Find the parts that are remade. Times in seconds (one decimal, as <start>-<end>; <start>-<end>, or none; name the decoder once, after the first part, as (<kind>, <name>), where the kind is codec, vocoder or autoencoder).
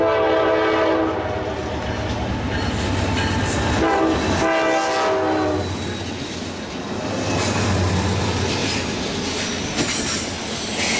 none